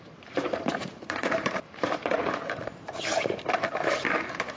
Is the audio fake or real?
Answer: fake